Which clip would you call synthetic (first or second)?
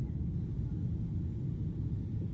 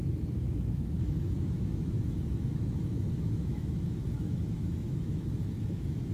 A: second